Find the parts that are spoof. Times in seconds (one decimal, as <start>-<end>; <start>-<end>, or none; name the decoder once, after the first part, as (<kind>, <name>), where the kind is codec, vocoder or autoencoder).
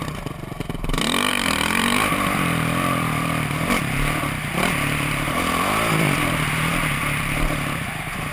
1.3-6.2 (vocoder, BigVGAN v2)